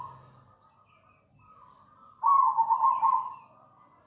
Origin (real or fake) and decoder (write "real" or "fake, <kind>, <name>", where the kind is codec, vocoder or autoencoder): real